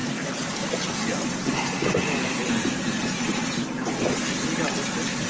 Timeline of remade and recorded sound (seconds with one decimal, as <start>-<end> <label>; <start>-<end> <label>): 0.0-0.6 remade; 0.6-5.3 recorded

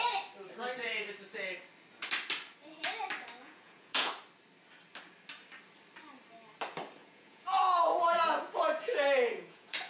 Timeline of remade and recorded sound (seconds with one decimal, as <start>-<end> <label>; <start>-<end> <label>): 0.0-3.4 recorded; 3.4-4.1 remade; 4.1-7.0 recorded; 7.0-9.9 remade